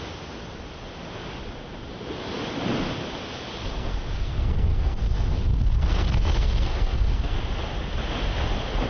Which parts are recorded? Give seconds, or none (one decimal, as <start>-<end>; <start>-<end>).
0.0-3.6; 7.4-8.9